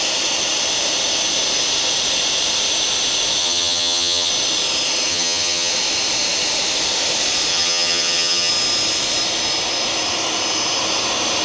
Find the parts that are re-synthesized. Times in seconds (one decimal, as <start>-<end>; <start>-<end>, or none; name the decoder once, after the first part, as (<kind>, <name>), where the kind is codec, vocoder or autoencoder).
3.4-4.3 (vocoder, HiFi-GAN); 5.1-5.7; 7.5-8.5